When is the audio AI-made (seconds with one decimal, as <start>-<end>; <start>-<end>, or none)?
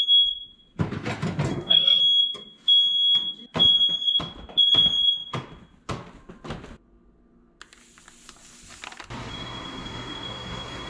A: 1.5-2.0; 9.3-10.9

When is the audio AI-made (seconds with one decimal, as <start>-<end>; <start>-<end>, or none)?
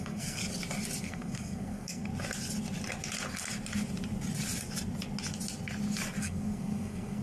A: 0.0-0.4; 1.0-2.1; 6.2-7.2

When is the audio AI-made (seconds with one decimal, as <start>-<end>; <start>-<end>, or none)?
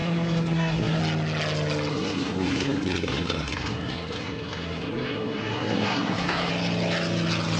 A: 0.0-1.0; 1.9-6.5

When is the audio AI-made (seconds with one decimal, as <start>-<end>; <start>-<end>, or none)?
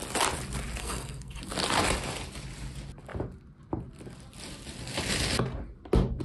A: 0.8-1.4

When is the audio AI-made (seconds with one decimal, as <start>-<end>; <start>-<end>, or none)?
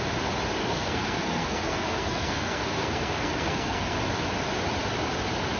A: 0.6-4.0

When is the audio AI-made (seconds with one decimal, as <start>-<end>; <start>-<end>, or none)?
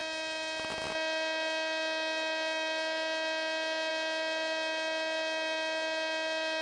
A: none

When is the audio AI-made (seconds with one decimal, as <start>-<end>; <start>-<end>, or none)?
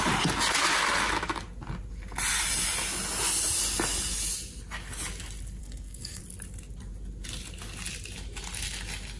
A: 5.6-6.2